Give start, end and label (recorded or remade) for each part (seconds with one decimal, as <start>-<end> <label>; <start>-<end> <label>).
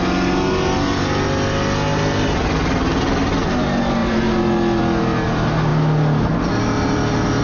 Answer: 0.0-7.4 recorded